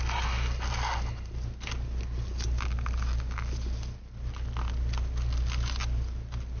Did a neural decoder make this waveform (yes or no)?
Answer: no